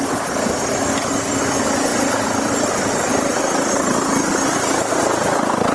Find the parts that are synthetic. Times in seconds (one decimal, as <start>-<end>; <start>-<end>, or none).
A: 0.0-1.4

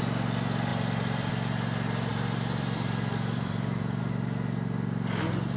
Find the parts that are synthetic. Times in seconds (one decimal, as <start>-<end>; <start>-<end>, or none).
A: 0.7-1.3; 2.1-4.0

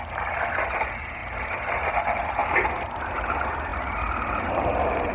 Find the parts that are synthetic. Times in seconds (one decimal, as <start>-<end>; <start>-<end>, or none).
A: 2.4-3.3

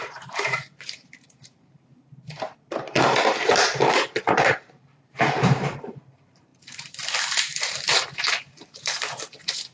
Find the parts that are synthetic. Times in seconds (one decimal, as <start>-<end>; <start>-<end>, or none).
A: 0.0-9.7

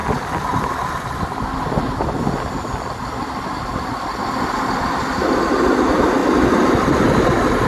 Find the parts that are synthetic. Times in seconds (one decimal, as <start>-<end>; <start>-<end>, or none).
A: none

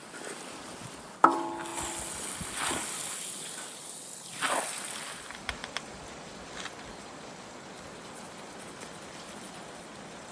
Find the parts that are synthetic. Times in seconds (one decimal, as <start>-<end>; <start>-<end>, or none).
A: 0.6-1.2

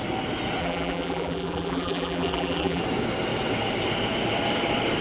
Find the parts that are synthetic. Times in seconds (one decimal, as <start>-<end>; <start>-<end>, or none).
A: 0.6-2.8

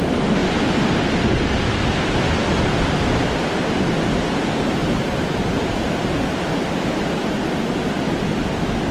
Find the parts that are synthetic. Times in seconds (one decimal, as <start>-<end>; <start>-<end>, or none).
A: 0.4-1.4; 2.4-3.2; 4.8-6.8